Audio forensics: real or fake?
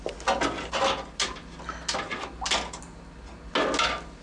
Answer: real